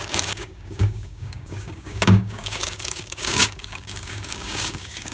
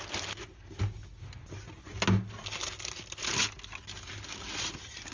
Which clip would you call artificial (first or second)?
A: first